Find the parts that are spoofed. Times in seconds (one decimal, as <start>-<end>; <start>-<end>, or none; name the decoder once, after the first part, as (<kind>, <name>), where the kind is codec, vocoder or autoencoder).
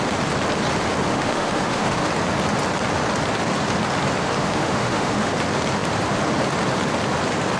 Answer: 1.1-2.1 (autoencoder, DAC-VAE); 4.4-5.3